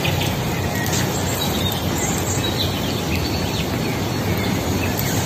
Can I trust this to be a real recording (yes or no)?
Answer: yes